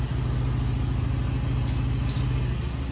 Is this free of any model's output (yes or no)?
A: yes